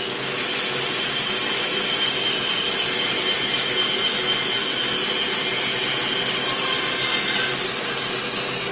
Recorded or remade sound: recorded